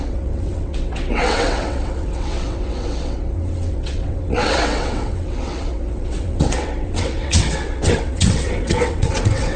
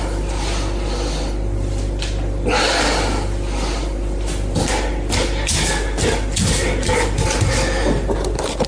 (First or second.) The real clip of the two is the second